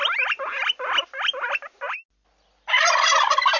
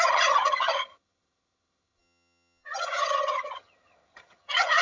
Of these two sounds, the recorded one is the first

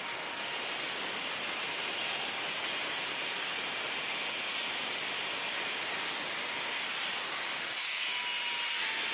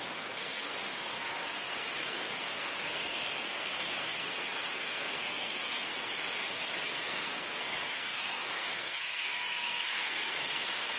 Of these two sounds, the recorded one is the first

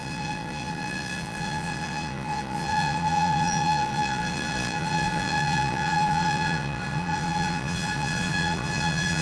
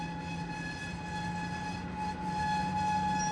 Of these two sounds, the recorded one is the second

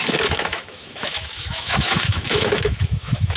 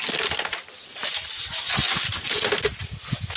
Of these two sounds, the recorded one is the second